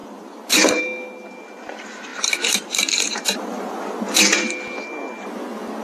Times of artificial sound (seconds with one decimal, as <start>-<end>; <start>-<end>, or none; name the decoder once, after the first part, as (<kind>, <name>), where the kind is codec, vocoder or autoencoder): 0.0-0.8 (vocoder, BigVGAN v2); 2.1-3.8